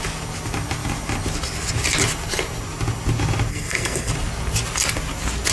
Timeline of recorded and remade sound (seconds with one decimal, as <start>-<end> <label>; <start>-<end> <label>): 0.0-3.5 recorded; 3.5-4.1 remade; 4.1-5.5 recorded